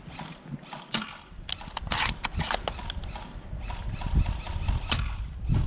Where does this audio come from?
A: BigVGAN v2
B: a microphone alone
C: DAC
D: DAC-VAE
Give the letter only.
B